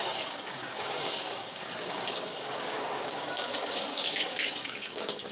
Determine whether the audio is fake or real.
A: fake